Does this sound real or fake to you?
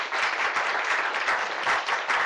real